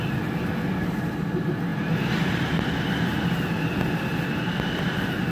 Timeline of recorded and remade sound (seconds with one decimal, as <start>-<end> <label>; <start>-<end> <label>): 0.0-5.3 recorded